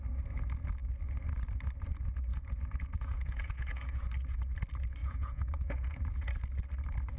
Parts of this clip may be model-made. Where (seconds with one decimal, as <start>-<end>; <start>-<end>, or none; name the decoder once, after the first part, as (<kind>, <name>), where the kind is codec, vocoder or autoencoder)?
2.3-4.0 (vocoder, Vocos); 5.0-6.3